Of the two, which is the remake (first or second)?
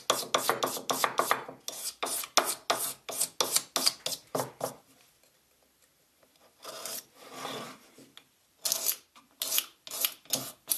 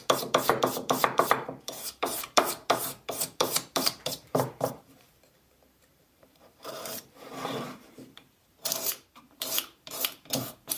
second